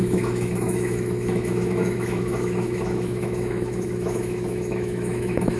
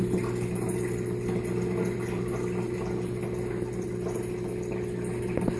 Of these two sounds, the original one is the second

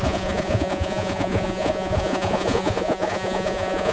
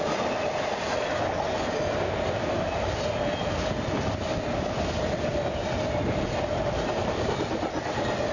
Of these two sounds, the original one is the second